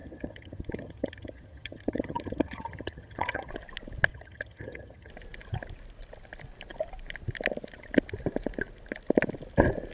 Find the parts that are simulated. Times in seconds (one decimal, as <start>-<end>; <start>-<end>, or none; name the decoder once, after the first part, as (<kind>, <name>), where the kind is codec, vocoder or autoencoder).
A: 0.0-3.5 (vocoder, HiFi-GAN); 4.1-5.1